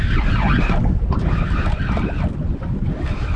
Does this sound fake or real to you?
real